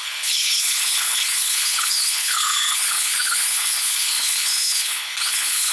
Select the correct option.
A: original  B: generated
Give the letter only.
B